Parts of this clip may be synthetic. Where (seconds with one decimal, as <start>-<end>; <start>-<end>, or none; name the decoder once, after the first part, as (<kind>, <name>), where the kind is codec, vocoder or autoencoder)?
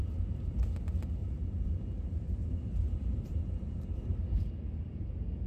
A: 0.0-0.7 (vocoder, BigVGAN v2); 1.2-4.5